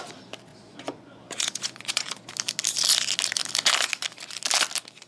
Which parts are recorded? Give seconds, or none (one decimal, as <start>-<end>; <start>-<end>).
0.0-0.5; 2.3-5.1